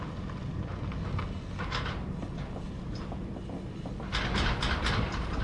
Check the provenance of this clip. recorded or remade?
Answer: recorded